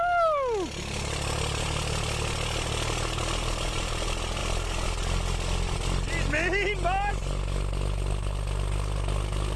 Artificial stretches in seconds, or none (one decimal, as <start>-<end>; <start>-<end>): none